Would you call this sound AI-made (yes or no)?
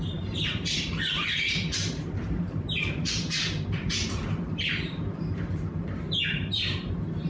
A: yes